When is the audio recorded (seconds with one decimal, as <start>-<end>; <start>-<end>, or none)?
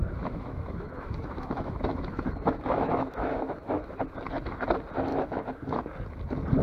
4.0-5.1; 5.8-6.6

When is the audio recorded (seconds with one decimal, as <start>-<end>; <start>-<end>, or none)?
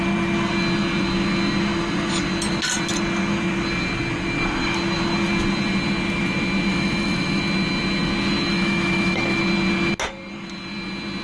0.0-6.7; 7.4-8.5; 9.4-11.2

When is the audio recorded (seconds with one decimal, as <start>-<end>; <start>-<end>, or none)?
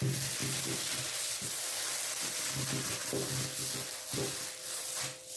0.0-5.4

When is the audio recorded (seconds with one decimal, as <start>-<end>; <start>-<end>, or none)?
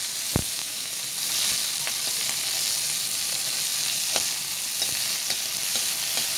0.0-0.4; 0.9-6.4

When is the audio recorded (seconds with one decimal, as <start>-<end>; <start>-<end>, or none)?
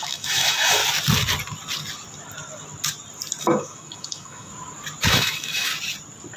0.8-3.4; 4.5-5.1; 5.7-6.4